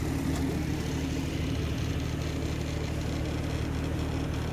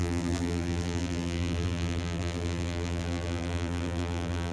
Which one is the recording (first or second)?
first